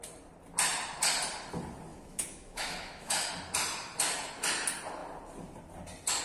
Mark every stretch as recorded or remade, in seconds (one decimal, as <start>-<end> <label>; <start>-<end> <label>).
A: 0.0-1.9 recorded; 1.9-3.3 remade; 3.3-6.2 recorded